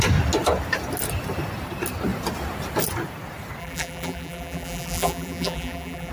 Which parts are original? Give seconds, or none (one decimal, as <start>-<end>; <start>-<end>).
0.0-3.6

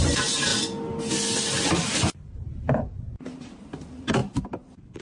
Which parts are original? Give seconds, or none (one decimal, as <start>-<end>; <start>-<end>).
0.5-1.7